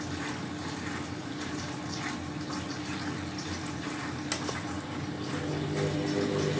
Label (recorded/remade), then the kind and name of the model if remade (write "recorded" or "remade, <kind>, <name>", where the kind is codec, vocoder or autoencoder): recorded